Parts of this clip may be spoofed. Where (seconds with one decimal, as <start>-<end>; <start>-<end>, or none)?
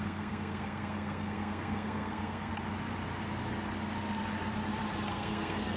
0.0-2.5; 5.1-5.8